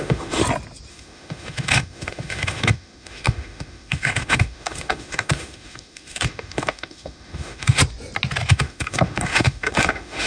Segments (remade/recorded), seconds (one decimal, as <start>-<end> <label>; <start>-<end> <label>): 0.0-0.4 remade; 0.4-0.9 recorded; 0.9-7.8 remade; 7.8-8.5 recorded; 8.5-10.3 remade